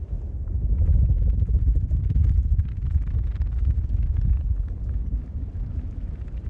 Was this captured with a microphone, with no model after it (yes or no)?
yes